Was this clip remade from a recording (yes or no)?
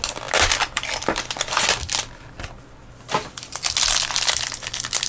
no